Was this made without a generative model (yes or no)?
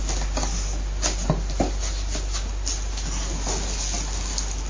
yes